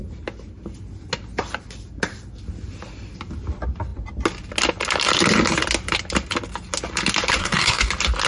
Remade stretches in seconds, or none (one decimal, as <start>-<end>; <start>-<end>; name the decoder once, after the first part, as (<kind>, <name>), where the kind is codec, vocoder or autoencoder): 7.4-7.9 (codec, SNAC)